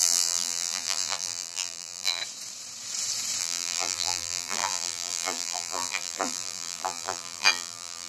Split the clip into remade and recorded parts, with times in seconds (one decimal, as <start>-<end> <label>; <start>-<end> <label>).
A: 0.0-2.2 remade; 2.2-3.4 recorded; 3.4-8.1 remade